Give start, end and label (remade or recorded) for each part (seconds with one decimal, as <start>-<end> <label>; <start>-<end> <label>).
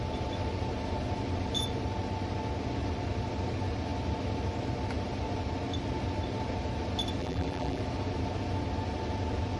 0.0-7.2 recorded; 7.2-7.8 remade; 7.8-9.6 recorded